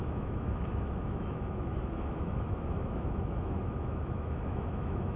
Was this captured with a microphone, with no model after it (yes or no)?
no